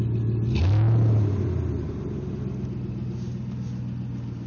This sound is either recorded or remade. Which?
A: recorded